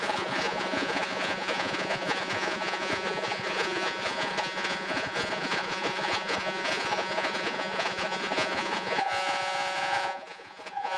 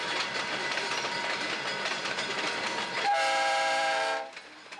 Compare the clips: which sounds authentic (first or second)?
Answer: second